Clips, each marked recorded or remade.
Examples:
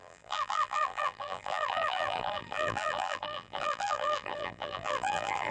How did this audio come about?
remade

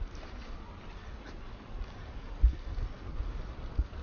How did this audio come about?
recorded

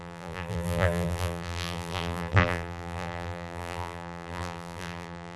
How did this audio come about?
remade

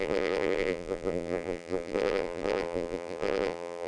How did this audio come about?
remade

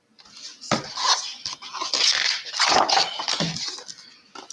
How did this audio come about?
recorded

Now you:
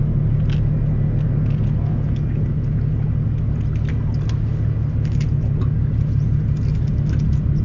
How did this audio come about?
recorded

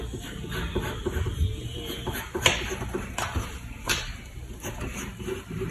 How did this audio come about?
remade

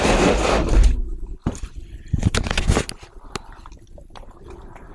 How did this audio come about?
recorded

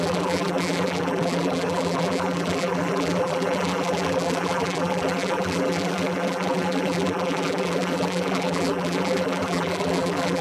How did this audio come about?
remade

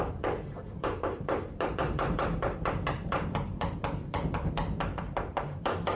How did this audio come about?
remade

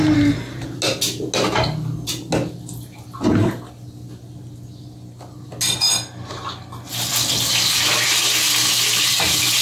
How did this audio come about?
recorded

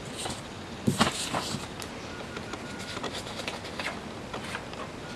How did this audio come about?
recorded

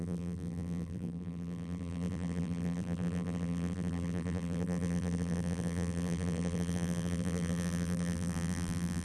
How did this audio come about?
remade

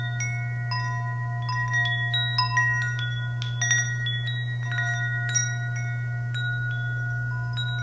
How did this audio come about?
recorded